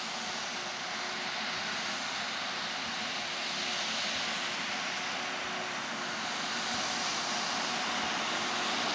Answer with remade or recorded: recorded